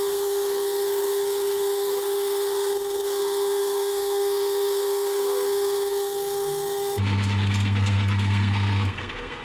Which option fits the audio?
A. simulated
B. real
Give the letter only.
A